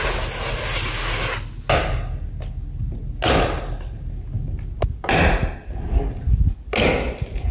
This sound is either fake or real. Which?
real